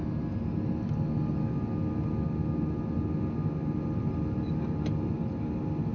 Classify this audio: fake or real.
real